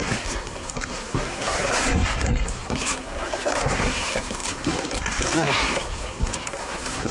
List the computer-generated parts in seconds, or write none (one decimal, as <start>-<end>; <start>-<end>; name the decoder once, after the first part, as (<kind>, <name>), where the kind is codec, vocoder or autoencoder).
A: 0.0-7.1 (codec, SNAC)